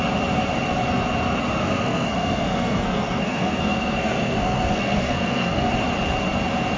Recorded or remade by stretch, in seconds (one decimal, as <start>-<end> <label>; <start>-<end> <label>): 0.0-1.6 recorded; 1.6-5.7 remade; 5.7-6.8 recorded